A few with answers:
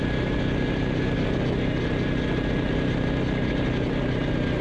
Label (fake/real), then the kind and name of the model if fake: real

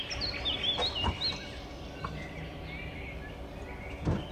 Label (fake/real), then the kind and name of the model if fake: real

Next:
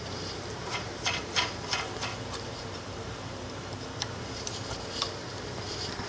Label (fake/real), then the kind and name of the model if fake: fake, vocoder, BigVGAN v2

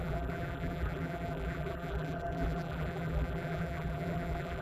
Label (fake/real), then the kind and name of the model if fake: fake, vocoder, BigVGAN v2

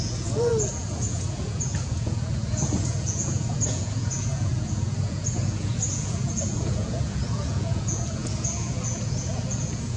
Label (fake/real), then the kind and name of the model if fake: fake, vocoder, Vocos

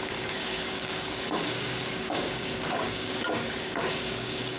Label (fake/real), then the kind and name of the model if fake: fake, codec, DAC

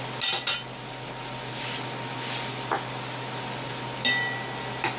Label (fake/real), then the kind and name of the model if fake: real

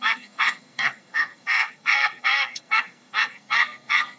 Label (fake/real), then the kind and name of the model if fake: fake, codec, SNAC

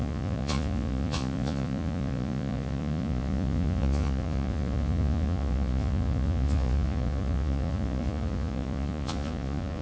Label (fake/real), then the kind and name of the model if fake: fake, vocoder, Vocos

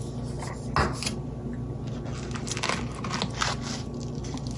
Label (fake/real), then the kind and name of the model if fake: real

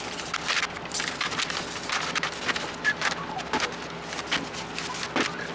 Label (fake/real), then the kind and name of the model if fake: real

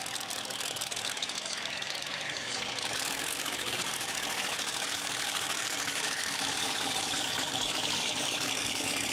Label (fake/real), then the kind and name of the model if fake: fake, codec, DAC